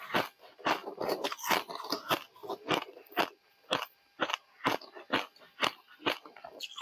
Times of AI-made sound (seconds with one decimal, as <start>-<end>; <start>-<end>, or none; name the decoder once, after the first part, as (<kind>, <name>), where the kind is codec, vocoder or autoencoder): 0.8-1.3 (vocoder, BigVGAN v2); 2.4-4.8